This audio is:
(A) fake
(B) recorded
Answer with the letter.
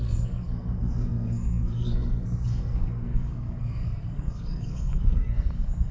A